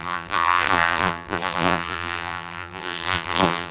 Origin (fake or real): fake